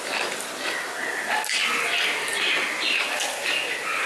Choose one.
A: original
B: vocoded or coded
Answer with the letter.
A